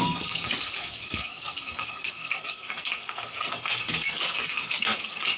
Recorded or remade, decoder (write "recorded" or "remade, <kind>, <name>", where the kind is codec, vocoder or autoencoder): remade, codec, SNAC